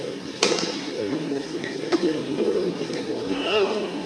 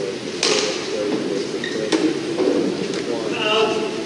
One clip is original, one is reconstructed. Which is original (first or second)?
second